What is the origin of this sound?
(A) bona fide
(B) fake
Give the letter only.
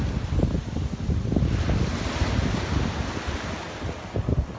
A